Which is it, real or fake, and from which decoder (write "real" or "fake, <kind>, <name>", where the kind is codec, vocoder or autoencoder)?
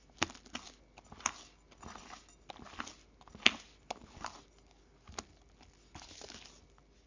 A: real